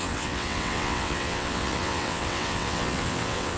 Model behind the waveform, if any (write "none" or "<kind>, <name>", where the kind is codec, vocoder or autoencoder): vocoder, WaveNeXt